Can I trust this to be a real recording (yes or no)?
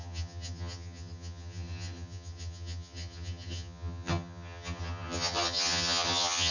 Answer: no